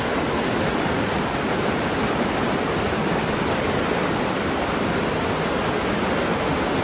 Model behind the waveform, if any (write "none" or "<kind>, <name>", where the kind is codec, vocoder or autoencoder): none